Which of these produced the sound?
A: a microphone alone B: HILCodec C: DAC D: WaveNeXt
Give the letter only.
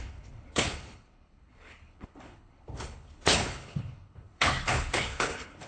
B